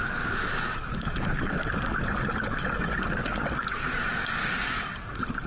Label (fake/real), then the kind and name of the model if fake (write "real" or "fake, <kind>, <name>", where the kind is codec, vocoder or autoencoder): fake, codec, DAC